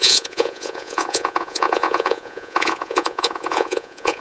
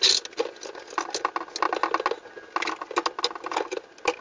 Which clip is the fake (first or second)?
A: first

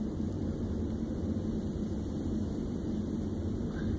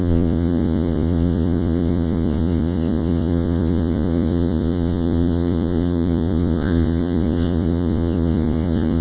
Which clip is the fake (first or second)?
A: second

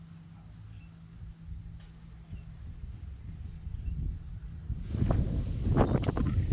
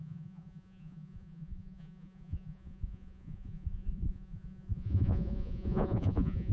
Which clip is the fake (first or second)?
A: second